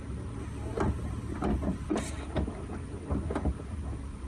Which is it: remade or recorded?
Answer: recorded